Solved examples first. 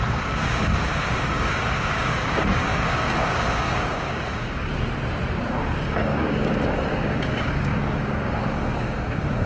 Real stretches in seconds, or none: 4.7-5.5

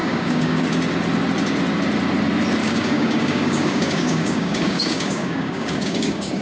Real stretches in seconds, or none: 0.6-2.6

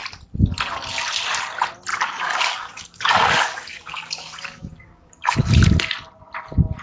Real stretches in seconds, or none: 0.0-1.9; 5.5-6.8